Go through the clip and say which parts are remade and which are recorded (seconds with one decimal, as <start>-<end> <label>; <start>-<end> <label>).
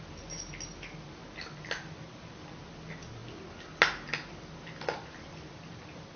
0.0-6.2 recorded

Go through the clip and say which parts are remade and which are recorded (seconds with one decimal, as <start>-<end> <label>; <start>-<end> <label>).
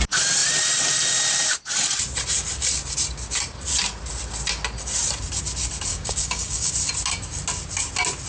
0.0-5.9 recorded; 5.9-6.7 remade; 6.7-8.3 recorded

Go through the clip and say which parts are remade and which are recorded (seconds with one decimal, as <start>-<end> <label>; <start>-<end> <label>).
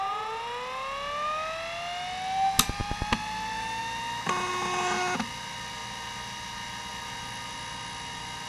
0.0-8.5 recorded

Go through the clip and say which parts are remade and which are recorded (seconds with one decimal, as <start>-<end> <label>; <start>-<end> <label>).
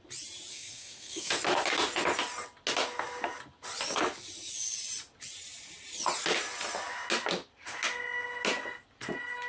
0.0-0.5 recorded; 0.5-1.3 remade; 1.3-9.5 recorded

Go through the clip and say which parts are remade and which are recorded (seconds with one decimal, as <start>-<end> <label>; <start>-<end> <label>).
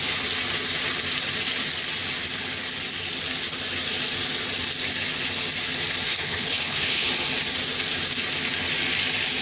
0.0-6.1 recorded; 6.1-7.1 remade; 7.1-9.4 recorded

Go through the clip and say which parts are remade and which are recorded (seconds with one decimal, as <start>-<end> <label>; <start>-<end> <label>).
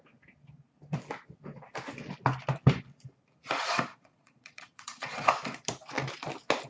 0.0-3.9 recorded; 3.9-5.3 remade; 5.3-6.7 recorded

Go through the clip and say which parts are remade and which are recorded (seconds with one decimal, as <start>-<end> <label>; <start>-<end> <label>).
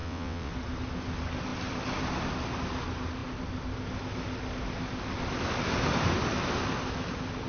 0.0-0.5 remade; 0.5-7.5 recorded